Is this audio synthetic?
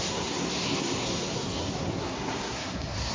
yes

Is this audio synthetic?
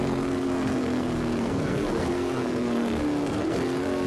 yes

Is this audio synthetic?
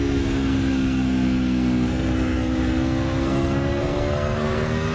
yes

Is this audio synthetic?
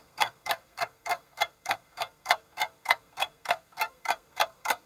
yes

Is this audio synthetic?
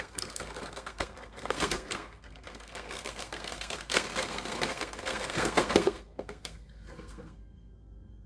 yes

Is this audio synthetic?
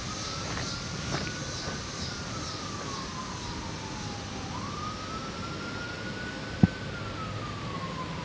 no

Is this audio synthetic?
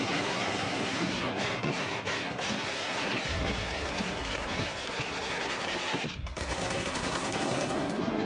yes